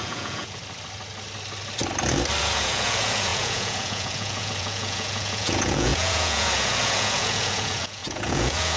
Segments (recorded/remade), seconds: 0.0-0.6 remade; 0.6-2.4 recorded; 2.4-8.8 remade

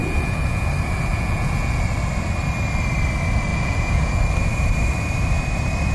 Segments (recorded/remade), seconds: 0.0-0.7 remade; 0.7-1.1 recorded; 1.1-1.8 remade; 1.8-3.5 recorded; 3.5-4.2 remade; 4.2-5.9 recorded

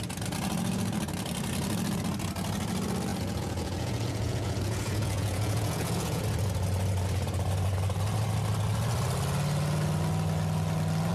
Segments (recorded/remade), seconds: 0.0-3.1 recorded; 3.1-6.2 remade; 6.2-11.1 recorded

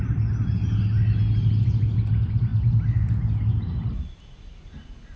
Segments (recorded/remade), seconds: 0.0-5.2 recorded

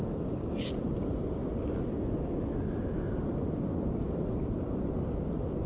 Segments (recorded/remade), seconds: 0.0-1.4 remade; 1.4-4.0 recorded; 4.0-5.7 remade

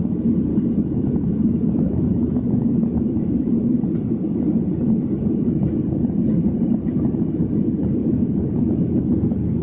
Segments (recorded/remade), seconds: 0.0-0.5 recorded; 0.5-3.8 remade; 3.8-8.0 recorded; 8.0-8.9 remade; 8.9-9.6 recorded